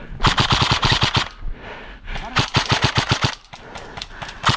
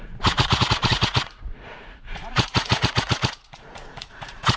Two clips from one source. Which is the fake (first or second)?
second